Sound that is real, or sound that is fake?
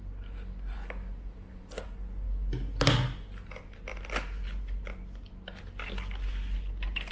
real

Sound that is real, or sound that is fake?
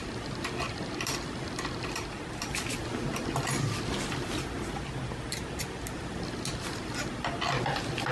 real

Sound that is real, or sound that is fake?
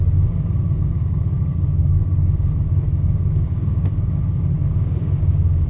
fake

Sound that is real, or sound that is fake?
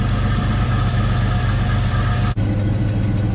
real